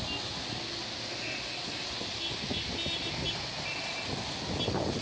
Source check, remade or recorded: recorded